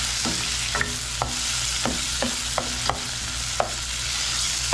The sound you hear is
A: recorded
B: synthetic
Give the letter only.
A